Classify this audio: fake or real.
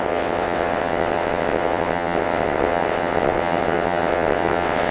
fake